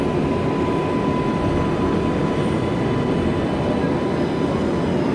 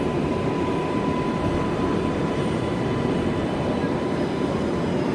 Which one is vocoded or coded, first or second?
second